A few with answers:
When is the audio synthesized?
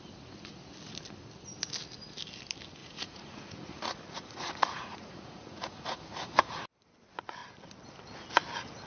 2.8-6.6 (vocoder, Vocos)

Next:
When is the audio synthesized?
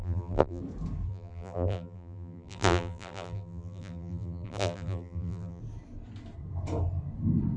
0.0-0.6 (vocoder, BigVGAN v2); 1.1-5.6